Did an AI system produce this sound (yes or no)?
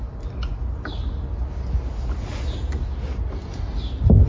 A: no